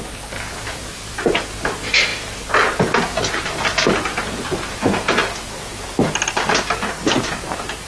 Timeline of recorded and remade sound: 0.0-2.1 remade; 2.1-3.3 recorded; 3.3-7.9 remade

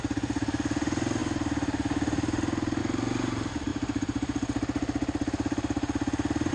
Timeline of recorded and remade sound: 0.0-3.7 recorded; 3.7-6.5 remade